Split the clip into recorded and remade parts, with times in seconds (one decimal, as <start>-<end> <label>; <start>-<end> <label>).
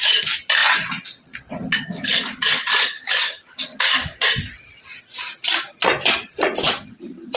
0.0-7.4 recorded